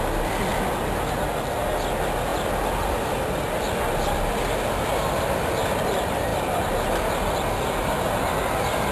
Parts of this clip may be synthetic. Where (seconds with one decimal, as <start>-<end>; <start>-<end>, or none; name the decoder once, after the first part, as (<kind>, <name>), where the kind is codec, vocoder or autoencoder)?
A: none